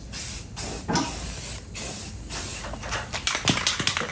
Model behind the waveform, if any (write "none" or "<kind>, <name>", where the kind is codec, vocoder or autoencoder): none